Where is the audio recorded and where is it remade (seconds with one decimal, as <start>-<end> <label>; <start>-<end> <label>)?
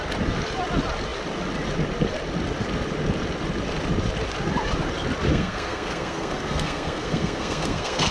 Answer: 0.0-5.3 recorded; 5.3-8.1 remade